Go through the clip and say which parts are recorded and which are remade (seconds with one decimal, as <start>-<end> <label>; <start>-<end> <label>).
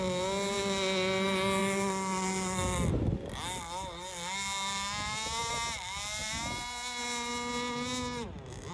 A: 0.0-8.7 recorded